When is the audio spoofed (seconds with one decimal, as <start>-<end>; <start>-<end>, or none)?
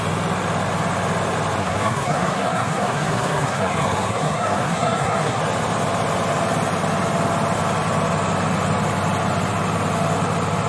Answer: 1.6-5.4